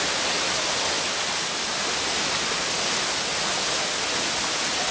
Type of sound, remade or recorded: recorded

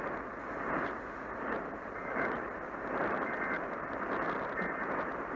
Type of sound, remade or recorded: recorded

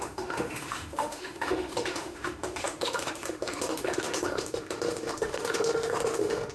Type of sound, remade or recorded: remade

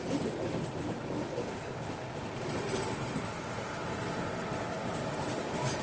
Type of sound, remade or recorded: recorded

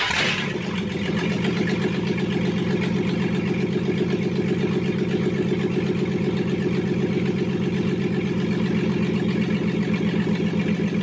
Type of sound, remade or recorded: recorded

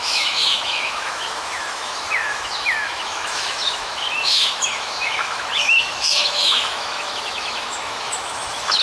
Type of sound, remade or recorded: remade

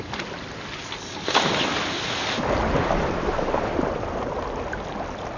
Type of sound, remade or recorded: recorded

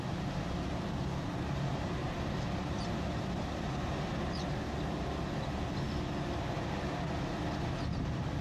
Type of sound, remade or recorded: recorded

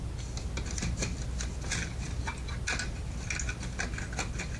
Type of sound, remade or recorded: recorded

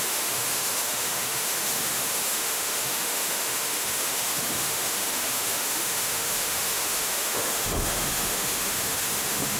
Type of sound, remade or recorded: remade